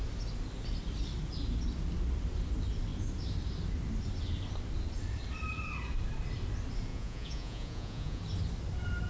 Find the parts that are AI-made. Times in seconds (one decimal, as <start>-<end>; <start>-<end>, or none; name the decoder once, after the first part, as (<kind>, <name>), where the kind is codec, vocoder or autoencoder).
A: 6.9-8.2 (vocoder, Vocos)